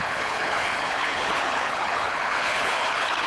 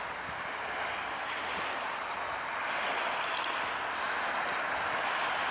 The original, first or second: second